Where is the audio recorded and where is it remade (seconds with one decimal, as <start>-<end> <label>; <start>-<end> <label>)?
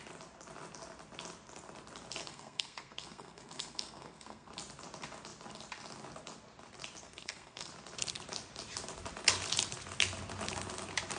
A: 0.0-2.2 recorded; 2.2-4.5 remade; 4.5-7.0 recorded; 7.0-7.7 remade; 7.7-11.2 recorded